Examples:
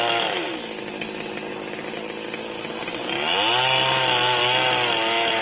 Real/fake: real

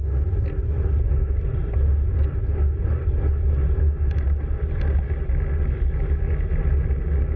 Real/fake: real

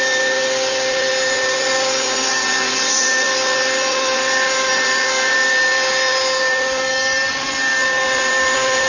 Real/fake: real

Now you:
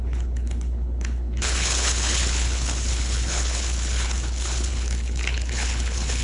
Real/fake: fake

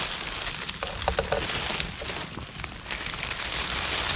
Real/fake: real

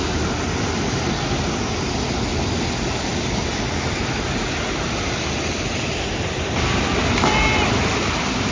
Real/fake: real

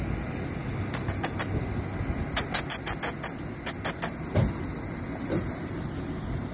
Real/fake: real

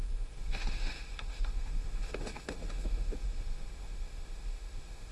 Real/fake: fake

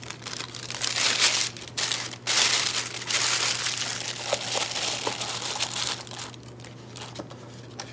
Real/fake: real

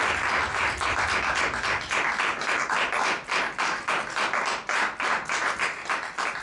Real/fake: real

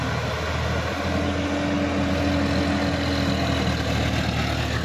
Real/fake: real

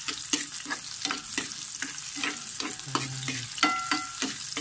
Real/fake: real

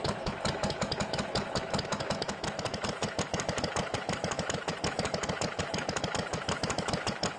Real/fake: fake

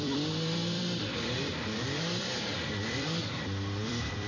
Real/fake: fake